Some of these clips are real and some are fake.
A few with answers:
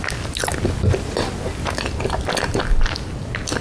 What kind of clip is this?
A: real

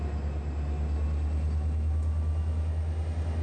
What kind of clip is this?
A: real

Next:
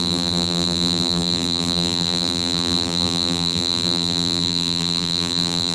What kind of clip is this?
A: fake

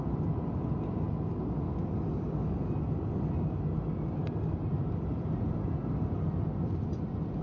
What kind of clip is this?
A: real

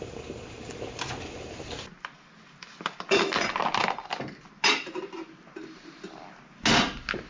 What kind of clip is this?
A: real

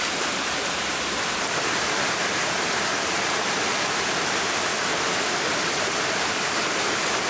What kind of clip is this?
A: fake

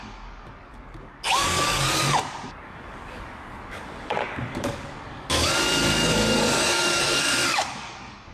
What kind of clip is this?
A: fake